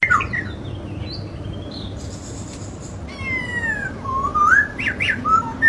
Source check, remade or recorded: recorded